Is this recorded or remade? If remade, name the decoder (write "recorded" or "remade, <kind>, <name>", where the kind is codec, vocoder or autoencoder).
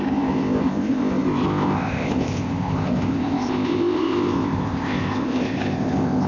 remade, codec, ZipCodec